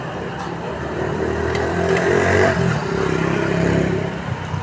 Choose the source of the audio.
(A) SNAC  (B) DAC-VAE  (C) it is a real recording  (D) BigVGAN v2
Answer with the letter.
D